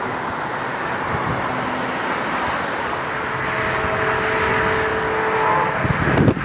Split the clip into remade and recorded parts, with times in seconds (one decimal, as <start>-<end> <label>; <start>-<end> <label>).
0.0-6.4 recorded